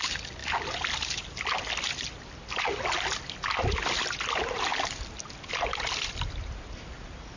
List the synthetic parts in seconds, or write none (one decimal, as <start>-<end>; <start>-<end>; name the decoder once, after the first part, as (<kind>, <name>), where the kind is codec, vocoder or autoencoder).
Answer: none